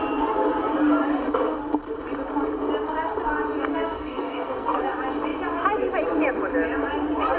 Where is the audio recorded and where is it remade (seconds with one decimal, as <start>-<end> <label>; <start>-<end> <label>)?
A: 0.0-3.7 recorded; 3.7-4.8 remade; 4.8-7.4 recorded